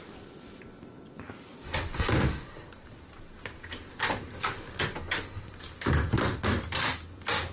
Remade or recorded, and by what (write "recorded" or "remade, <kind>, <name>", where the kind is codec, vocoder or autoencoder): recorded